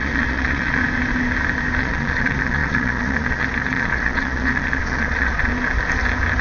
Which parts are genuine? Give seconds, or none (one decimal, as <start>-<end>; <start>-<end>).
0.8-1.8; 5.5-6.4